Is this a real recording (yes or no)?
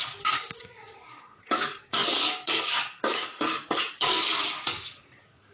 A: no